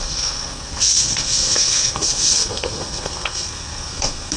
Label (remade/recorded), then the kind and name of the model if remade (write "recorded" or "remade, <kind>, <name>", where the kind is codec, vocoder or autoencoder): remade, codec, SNAC